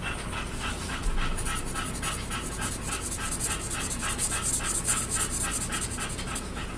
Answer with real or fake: real